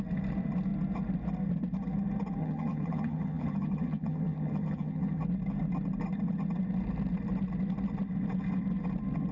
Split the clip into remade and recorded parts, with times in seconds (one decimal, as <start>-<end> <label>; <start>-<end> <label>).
0.0-2.4 recorded; 2.4-5.2 remade; 5.2-9.3 recorded